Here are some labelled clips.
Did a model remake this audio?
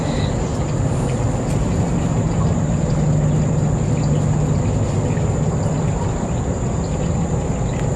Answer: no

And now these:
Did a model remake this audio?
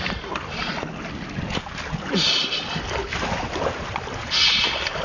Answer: no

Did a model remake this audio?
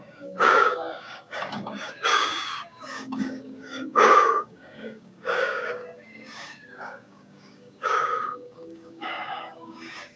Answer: yes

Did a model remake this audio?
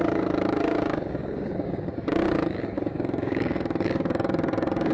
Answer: yes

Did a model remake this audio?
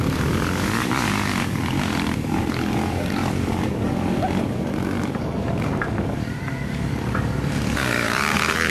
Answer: yes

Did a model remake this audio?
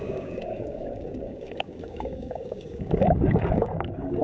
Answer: yes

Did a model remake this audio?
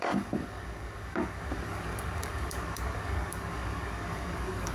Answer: yes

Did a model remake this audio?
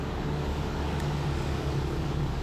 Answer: yes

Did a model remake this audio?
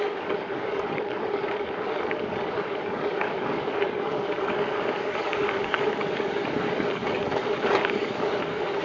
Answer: yes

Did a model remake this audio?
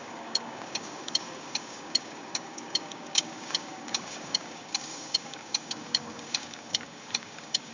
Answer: yes